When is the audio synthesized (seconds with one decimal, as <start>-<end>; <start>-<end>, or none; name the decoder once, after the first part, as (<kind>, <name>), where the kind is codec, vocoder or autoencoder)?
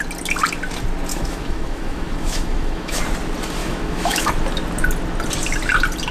1.1-3.0 (autoencoder, DAC-VAE); 3.6-4.3